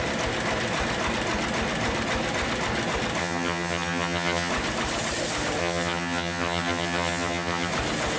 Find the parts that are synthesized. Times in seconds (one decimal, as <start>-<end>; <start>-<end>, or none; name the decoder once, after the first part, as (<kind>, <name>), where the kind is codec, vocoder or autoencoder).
3.2-4.5 (vocoder, HiFi-GAN); 5.6-7.7